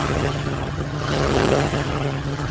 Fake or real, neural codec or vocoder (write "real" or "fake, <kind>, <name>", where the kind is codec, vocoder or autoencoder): fake, vocoder, HiFi-GAN